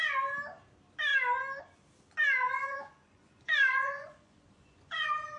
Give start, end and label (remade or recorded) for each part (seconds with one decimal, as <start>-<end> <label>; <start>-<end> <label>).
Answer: 0.0-2.4 recorded; 2.4-5.4 remade